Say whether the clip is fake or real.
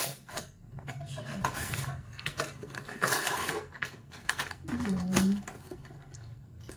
fake